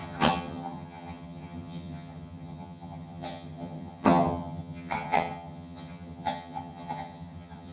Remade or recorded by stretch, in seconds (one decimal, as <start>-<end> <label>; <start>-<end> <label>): 0.0-7.7 remade